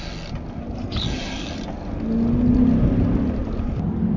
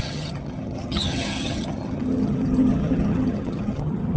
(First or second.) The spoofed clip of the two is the second